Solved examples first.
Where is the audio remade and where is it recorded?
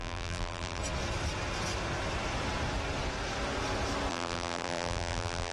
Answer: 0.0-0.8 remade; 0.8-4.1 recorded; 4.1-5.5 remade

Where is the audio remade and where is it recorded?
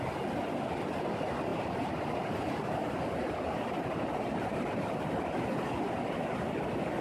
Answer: 0.0-1.5 recorded; 1.5-5.1 remade; 5.1-7.0 recorded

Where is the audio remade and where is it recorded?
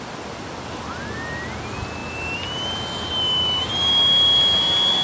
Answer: 0.0-5.0 recorded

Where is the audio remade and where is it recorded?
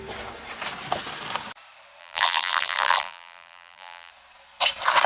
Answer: 0.0-2.0 recorded; 2.0-4.1 remade; 4.1-5.1 recorded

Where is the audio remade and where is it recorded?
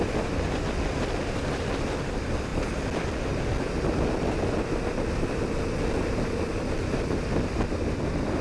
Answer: 0.0-8.4 recorded